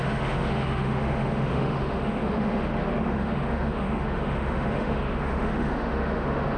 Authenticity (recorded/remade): remade